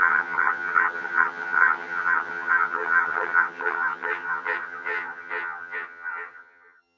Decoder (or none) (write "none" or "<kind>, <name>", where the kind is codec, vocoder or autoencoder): vocoder, HiFi-GAN